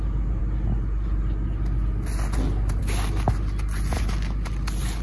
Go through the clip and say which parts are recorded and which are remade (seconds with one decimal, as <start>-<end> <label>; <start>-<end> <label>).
0.0-5.0 recorded